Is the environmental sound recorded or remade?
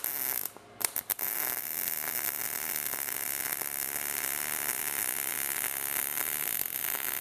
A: recorded